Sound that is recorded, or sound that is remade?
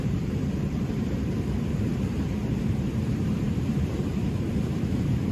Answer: remade